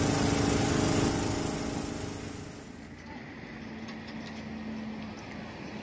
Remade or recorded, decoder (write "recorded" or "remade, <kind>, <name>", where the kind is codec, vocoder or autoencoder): recorded